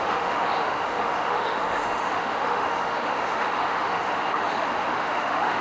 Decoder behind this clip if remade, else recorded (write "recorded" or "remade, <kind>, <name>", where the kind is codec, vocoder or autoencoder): remade, autoencoder, DAC-VAE